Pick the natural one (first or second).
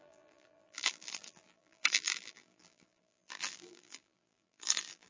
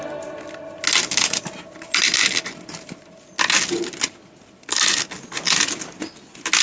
second